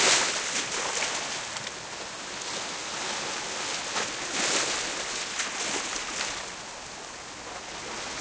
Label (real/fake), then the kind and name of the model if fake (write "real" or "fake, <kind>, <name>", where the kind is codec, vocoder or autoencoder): real